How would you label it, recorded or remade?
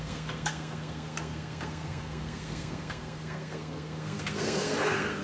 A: remade